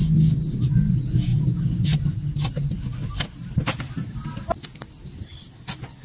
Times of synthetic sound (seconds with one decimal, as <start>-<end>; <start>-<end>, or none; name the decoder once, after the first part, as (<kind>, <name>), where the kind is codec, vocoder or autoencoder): none